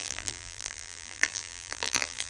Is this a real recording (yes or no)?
no